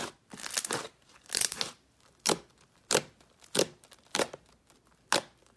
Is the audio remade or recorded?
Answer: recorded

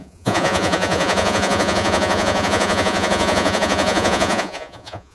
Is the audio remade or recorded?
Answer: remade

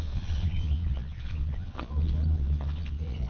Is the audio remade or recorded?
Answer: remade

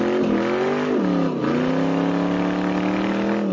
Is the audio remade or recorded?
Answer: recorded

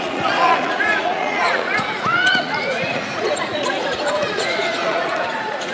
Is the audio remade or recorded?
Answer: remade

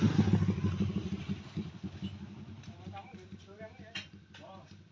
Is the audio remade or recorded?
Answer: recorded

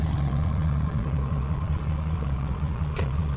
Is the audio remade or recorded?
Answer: remade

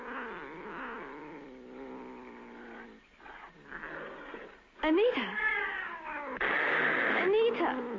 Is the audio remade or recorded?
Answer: recorded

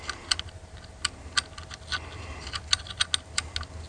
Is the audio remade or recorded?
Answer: recorded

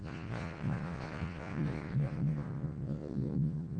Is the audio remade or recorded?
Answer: remade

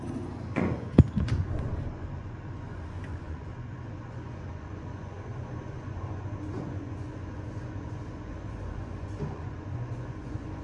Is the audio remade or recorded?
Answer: remade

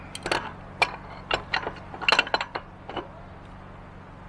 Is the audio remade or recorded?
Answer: recorded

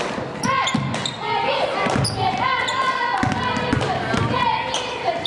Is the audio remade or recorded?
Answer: recorded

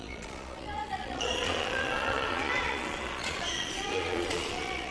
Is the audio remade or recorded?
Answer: remade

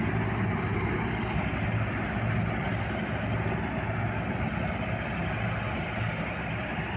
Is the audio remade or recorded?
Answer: recorded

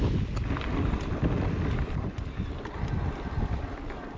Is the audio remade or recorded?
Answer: recorded